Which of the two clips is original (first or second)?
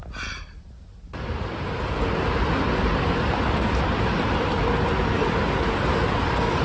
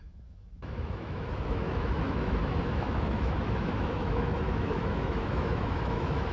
first